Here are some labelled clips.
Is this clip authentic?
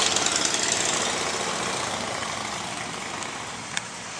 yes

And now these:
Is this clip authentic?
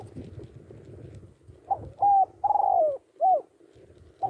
yes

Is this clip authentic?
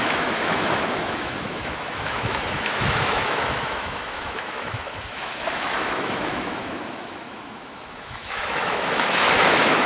no